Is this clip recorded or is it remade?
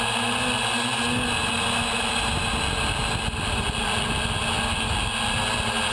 recorded